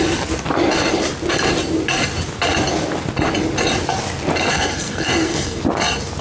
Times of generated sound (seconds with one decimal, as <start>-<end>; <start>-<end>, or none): 4.5-5.6